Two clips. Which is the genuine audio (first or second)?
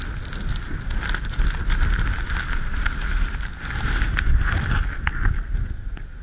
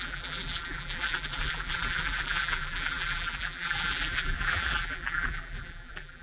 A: first